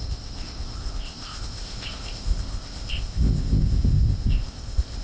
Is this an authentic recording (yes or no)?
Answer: no